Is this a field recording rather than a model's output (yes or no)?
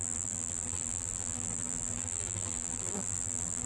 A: no